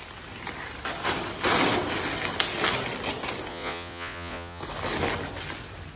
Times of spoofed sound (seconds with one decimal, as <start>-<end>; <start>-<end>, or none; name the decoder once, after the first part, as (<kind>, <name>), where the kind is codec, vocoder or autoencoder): 3.5-4.6 (vocoder, Vocos)